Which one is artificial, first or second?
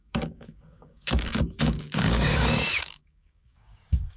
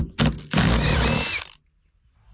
first